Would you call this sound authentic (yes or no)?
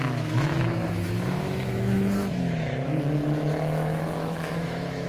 no